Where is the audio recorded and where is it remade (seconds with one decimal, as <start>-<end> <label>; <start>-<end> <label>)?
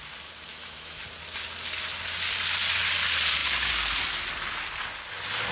0.0-0.5 recorded; 0.5-1.0 remade; 1.0-5.5 recorded